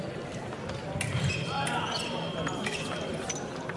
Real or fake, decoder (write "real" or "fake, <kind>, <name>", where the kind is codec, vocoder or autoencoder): real